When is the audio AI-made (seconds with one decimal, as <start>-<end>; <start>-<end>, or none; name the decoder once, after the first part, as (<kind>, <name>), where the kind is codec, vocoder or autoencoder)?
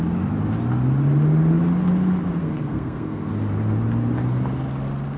2.4-3.3 (codec, SNAC)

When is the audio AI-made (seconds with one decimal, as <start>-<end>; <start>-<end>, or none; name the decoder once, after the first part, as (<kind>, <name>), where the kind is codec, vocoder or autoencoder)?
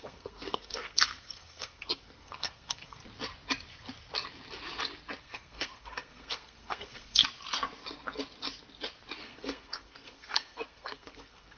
0.0-3.0 (codec, SNAC); 5.2-7.2; 9.2-11.6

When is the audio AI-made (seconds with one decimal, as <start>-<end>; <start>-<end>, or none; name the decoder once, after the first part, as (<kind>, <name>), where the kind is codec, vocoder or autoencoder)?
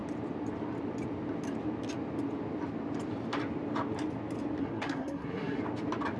4.6-5.6 (codec, SNAC)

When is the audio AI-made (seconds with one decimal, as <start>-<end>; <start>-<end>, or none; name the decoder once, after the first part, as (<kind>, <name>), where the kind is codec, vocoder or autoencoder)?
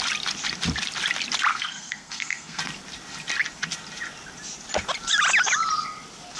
1.5-2.6 (codec, SNAC)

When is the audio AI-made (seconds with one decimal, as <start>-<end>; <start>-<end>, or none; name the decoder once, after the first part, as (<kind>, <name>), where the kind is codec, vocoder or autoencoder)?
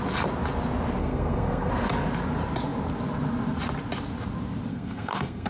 1.0-1.7 (codec, SNAC); 4.7-5.5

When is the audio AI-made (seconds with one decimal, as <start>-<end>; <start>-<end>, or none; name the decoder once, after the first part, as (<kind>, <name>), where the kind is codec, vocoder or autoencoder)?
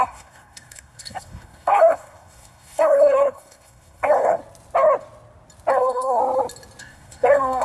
0.0-4.4 (codec, SNAC); 5.7-6.2; 6.8-7.6